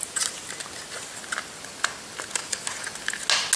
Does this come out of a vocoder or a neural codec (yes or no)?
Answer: no